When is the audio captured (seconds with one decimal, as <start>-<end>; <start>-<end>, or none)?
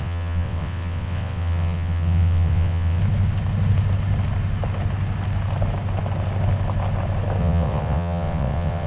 3.0-7.4